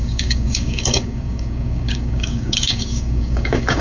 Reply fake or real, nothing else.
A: fake